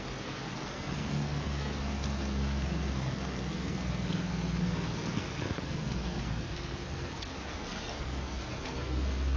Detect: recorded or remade remade